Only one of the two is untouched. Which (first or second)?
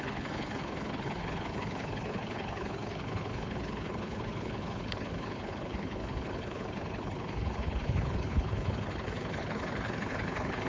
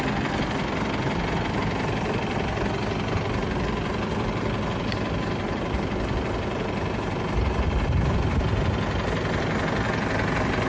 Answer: second